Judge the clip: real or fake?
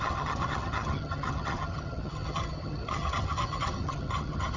fake